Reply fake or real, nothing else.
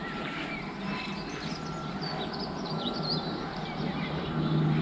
real